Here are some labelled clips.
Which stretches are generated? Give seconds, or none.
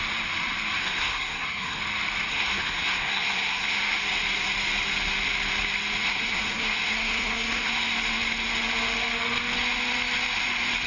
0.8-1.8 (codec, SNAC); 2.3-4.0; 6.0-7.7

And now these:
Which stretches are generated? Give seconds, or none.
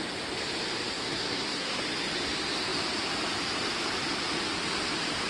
0.9-1.8 (codec, SNAC)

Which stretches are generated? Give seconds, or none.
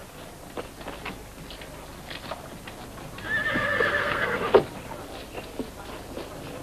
3.5-4.4 (codec, SNAC)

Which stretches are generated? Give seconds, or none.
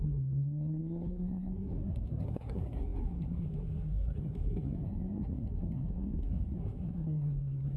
0.0-7.8 (codec, SNAC)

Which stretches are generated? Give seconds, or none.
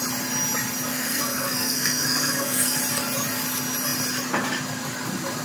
0.9-2.8 (codec, SNAC)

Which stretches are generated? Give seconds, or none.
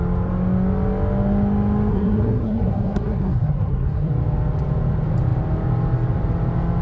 1.9-4.1 (codec, SNAC)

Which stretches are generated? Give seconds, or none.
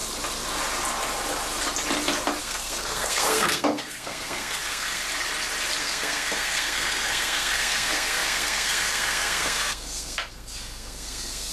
2.4-5.0 (codec, SNAC); 5.8-11.5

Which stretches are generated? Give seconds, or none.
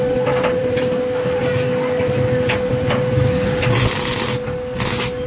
none